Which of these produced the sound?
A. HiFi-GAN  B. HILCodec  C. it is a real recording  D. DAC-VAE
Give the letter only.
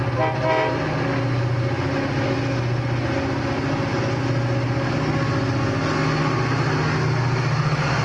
C